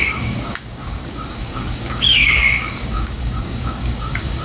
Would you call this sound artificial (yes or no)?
yes